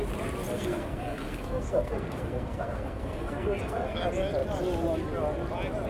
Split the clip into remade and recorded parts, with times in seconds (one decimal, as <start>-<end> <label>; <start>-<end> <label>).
0.0-0.5 recorded; 0.5-4.0 remade; 4.0-5.9 recorded